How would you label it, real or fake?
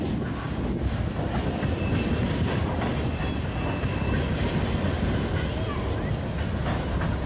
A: real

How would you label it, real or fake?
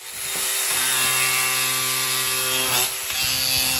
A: real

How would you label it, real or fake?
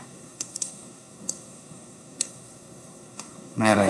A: fake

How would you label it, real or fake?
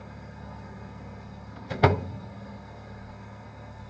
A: fake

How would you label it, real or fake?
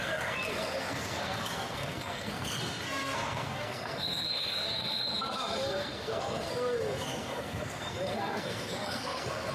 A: fake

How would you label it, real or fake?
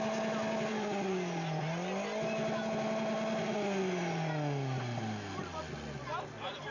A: real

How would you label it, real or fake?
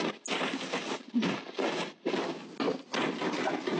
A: real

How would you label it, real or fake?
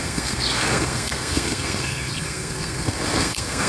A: fake